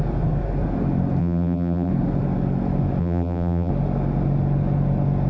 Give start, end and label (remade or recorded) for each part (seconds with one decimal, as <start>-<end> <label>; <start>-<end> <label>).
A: 0.0-1.2 recorded; 1.2-1.9 remade; 1.9-3.0 recorded; 3.0-3.7 remade; 3.7-5.3 recorded